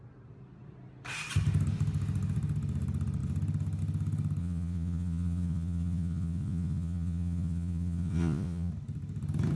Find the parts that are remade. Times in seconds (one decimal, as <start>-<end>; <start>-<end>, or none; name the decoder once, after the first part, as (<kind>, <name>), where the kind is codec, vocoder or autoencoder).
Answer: 4.4-8.7 (vocoder, Vocos)